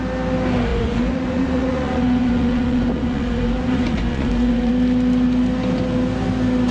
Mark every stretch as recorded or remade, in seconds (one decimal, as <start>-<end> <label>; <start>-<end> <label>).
0.0-0.7 recorded; 0.7-4.7 remade; 4.7-6.7 recorded

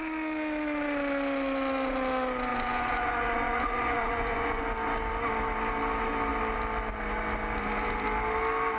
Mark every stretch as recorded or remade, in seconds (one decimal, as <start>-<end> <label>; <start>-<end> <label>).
0.0-2.5 recorded; 2.5-4.6 remade; 4.6-8.8 recorded